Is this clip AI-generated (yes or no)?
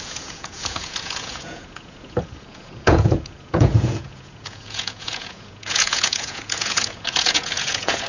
yes